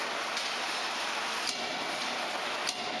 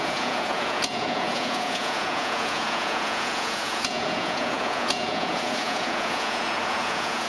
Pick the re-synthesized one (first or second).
second